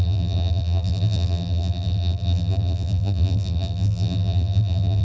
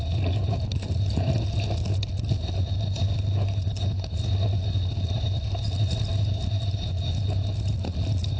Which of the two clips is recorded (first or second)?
second